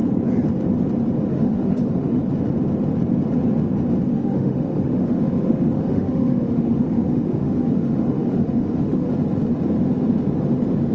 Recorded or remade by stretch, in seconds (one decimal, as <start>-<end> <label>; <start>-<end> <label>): 0.0-1.3 recorded; 1.3-2.2 remade; 2.2-4.1 recorded; 4.1-9.1 remade; 9.1-10.9 recorded